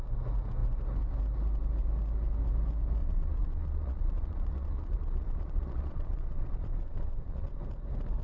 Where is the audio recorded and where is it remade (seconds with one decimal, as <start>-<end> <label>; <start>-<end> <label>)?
0.0-3.0 recorded; 3.0-7.6 remade; 7.6-8.2 recorded